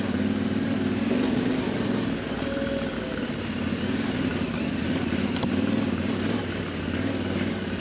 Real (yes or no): yes